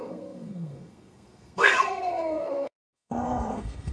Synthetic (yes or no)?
yes